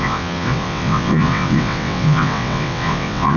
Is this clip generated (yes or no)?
yes